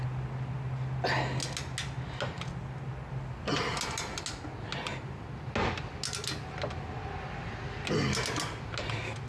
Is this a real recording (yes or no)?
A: yes